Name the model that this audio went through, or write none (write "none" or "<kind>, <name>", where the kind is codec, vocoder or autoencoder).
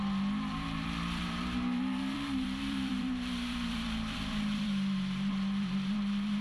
vocoder, BigVGAN v2